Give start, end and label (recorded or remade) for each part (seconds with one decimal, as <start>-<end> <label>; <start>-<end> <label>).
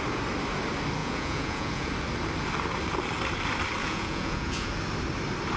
0.0-1.0 recorded; 1.0-1.9 remade; 1.9-3.8 recorded; 3.8-4.7 remade; 4.7-5.6 recorded